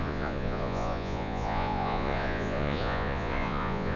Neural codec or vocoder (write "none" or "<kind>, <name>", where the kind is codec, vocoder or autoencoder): vocoder, Vocos